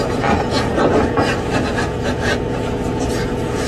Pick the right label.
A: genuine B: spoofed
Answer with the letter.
B